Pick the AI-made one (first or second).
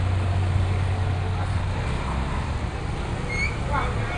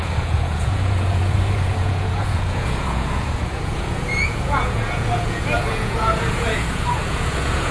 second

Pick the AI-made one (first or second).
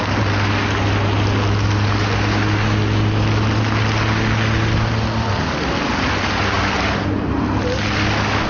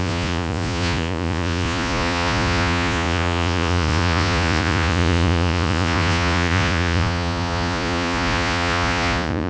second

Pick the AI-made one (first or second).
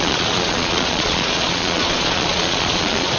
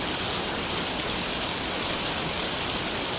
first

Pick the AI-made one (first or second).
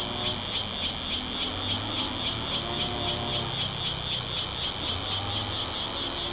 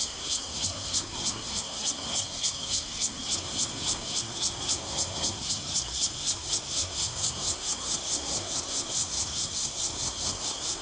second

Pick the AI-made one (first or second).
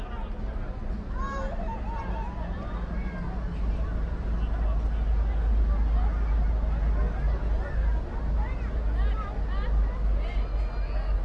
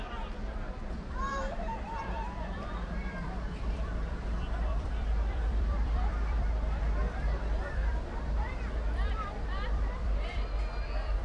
second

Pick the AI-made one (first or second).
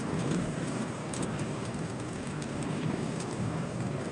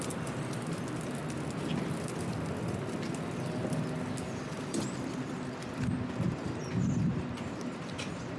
first